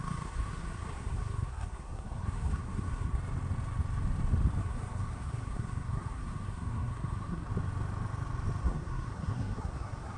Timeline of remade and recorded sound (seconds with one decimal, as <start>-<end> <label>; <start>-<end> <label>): 0.0-3.2 remade; 3.2-4.6 recorded; 4.6-7.5 remade; 7.5-8.6 recorded; 8.6-10.2 remade